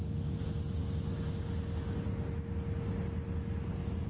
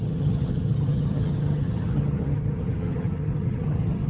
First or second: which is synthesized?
second